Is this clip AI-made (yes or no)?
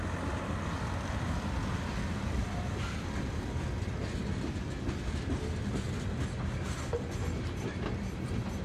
no